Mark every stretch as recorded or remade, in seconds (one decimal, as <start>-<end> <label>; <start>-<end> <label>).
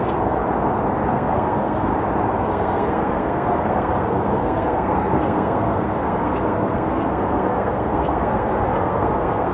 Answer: 0.0-0.4 remade; 0.4-1.1 recorded; 1.1-1.9 remade; 1.9-2.4 recorded; 2.4-9.5 remade